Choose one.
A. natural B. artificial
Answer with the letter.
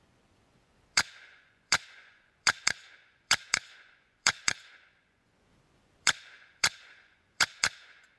B